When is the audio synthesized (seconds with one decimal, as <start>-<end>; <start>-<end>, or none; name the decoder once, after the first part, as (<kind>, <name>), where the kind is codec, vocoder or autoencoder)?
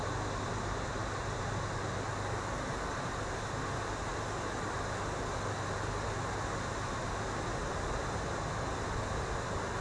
none